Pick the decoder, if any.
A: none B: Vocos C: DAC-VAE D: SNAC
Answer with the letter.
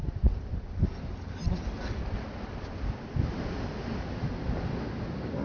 A